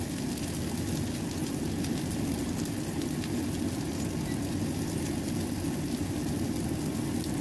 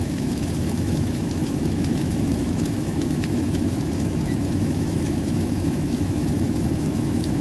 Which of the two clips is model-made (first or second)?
second